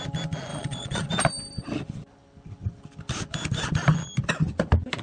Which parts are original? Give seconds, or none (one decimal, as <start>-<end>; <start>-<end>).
0.0-0.5; 1.1-5.0